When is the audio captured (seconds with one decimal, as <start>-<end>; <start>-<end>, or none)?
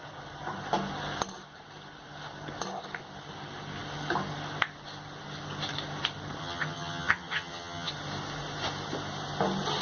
0.0-6.4; 7.9-9.8